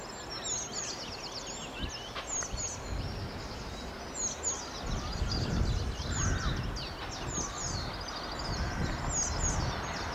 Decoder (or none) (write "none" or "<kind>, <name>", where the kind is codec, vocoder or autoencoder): none